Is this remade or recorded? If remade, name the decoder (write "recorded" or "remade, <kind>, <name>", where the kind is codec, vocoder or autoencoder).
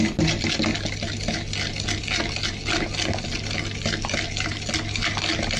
recorded